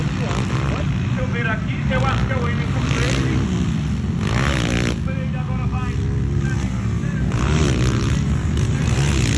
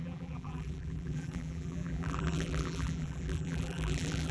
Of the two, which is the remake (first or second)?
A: second